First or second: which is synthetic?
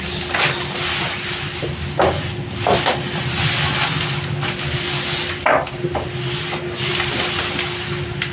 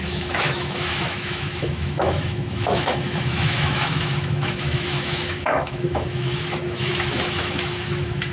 second